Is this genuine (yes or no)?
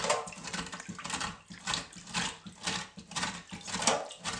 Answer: yes